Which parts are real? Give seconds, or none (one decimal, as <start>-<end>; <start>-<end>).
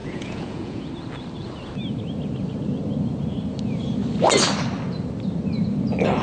0.8-6.2